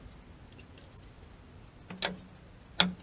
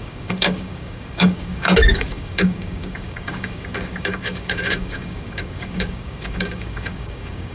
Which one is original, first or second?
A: first